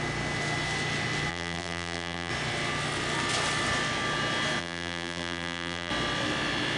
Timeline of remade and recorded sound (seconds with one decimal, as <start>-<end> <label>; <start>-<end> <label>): 0.0-1.3 recorded; 1.3-2.3 remade; 2.3-4.6 recorded; 4.6-5.9 remade; 5.9-6.8 recorded